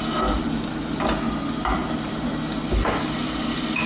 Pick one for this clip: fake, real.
real